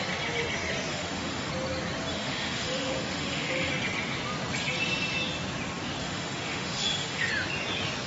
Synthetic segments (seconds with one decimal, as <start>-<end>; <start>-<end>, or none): 0.9-1.5; 2.1-3.7; 6.0-7.3